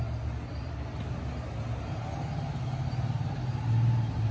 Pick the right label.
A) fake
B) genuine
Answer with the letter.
B